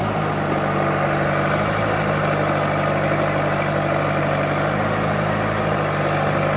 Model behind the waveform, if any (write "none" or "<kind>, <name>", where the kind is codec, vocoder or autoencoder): none